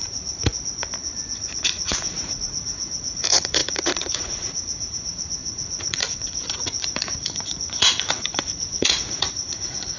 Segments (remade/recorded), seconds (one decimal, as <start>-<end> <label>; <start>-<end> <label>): 0.0-0.5 remade; 0.5-1.6 recorded; 1.6-10.0 remade